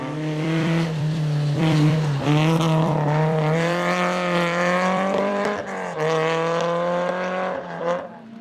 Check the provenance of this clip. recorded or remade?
remade